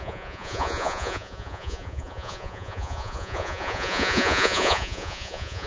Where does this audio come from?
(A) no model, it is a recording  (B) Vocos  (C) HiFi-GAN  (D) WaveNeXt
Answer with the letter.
B